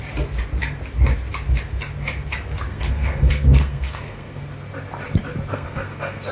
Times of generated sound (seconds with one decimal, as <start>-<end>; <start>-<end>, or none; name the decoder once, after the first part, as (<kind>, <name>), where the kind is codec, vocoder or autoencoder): 2.7-4.4 (codec, SNAC); 5.5-6.3